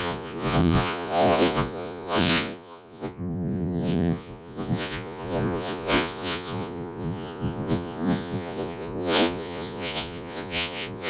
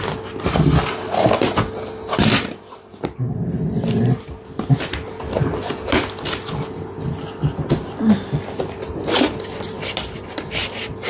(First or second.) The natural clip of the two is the second